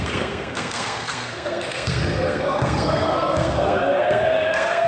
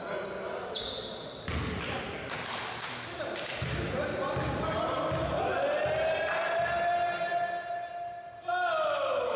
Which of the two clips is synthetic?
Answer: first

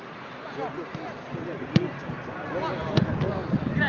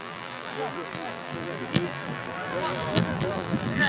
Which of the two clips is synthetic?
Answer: second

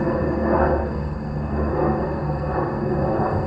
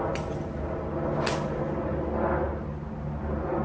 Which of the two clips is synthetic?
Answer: first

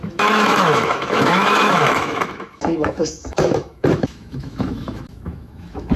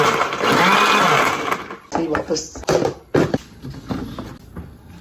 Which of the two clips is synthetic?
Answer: first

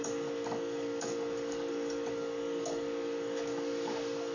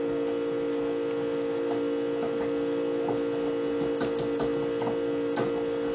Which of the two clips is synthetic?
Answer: first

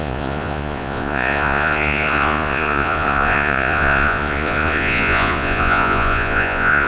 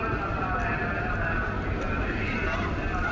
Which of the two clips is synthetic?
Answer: first